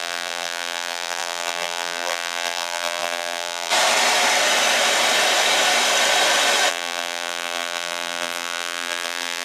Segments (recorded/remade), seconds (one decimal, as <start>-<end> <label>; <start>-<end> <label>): 0.0-3.7 remade; 3.7-6.7 recorded; 6.7-9.4 remade